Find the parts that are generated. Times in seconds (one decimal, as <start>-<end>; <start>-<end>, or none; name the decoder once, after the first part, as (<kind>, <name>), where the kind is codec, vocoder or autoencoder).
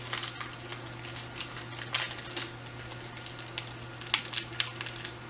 none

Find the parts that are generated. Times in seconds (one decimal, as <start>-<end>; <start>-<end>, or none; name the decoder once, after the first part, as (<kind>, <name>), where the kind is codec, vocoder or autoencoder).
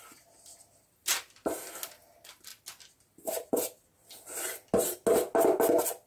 none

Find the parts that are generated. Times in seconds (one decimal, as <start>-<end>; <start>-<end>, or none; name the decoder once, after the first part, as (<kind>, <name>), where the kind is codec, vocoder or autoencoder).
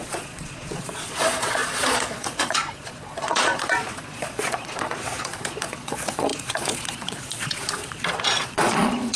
0.0-9.2 (vocoder, Vocos)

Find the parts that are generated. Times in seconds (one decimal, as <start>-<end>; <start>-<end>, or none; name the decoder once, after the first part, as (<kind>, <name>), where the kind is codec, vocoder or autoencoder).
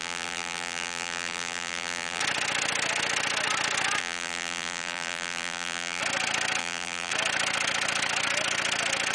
0.0-2.2 (vocoder, BigVGAN v2); 4.0-6.0; 6.6-7.1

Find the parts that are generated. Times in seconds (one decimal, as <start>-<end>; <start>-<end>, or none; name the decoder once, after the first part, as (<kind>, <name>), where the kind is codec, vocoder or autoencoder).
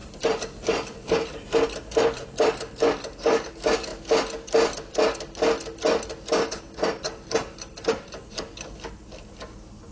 none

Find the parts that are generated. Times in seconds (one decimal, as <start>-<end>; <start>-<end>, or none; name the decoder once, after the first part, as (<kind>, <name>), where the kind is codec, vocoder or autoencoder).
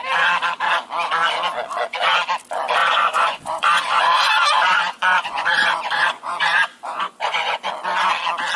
2.8-7.7 (vocoder, Vocos)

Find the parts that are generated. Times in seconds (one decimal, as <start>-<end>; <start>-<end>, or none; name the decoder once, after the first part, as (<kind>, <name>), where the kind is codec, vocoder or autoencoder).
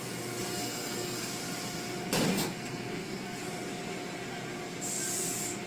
0.5-1.3 (codec, SNAC); 2.3-3.4